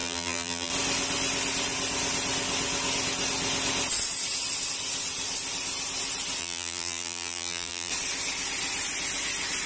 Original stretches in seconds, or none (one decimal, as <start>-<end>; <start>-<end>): 0.7-6.4; 7.9-9.7